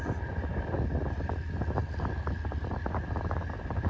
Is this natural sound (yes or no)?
yes